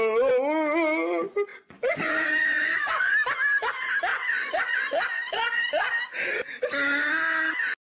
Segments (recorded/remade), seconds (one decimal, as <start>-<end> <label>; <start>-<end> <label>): 0.0-1.5 recorded; 1.5-3.1 remade; 3.1-4.1 recorded; 4.1-5.8 remade; 5.8-7.9 recorded